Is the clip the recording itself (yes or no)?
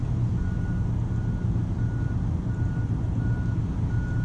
yes